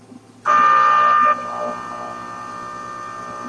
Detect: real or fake real